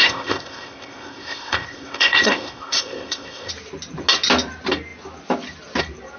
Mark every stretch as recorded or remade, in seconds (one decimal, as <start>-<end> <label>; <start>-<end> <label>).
0.0-3.5 remade; 3.5-6.2 recorded